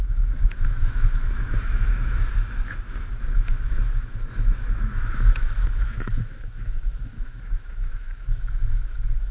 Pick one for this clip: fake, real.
fake